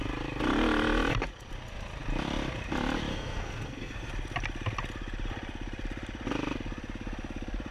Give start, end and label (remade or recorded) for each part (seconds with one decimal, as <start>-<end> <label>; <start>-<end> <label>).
0.0-3.1 recorded; 3.1-4.1 remade; 4.1-7.7 recorded